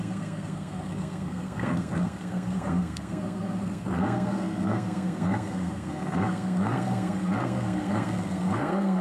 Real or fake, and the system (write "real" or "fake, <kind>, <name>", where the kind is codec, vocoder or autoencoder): fake, codec, SNAC